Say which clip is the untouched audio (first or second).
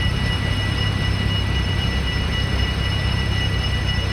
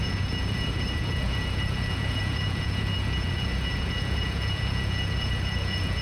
first